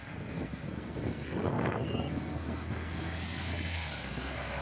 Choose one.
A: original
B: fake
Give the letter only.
B